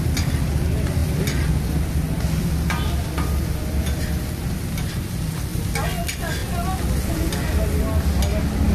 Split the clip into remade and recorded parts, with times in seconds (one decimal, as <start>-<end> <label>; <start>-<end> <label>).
0.0-8.7 recorded